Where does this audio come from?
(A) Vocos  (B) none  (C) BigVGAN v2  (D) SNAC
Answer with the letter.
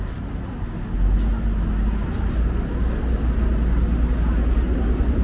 B